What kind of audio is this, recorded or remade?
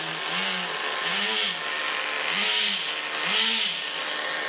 recorded